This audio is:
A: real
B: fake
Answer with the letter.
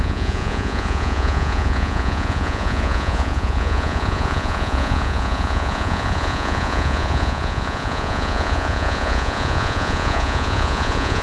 B